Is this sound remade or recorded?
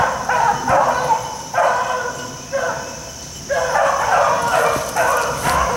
recorded